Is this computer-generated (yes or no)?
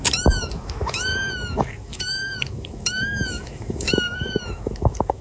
yes